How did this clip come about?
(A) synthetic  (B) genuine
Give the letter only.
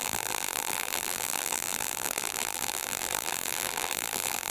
A